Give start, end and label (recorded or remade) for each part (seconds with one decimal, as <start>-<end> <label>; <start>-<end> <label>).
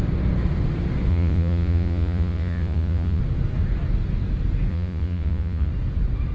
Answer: 0.0-1.1 recorded; 1.1-3.2 remade; 3.2-4.7 recorded; 4.7-5.7 remade; 5.7-6.3 recorded